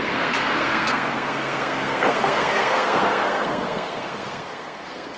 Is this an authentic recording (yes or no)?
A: no